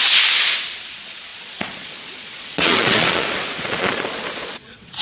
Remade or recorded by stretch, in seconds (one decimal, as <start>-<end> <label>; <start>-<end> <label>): 0.0-0.9 recorded; 0.9-5.0 remade